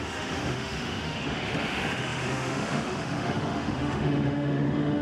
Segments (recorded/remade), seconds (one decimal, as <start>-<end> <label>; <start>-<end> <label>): 0.0-5.0 remade